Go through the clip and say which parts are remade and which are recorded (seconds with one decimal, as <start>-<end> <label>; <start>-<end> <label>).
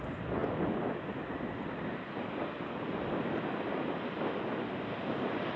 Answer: 0.0-5.6 recorded